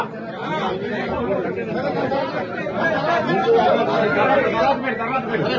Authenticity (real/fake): real